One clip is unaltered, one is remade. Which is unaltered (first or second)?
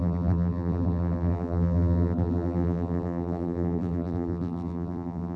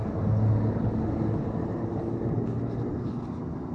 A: second